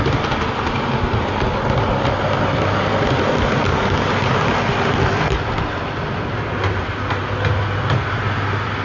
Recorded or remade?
recorded